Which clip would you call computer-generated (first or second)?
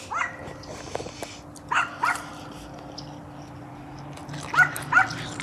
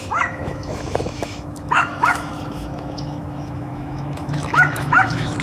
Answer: second